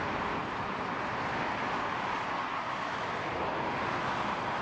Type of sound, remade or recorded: recorded